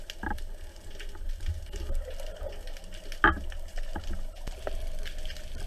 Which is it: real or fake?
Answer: real